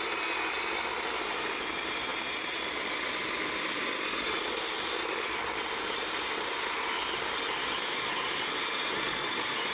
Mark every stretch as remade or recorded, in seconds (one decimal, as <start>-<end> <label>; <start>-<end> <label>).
0.0-9.7 recorded